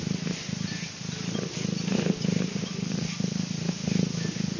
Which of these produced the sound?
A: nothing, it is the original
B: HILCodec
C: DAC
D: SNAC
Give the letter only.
A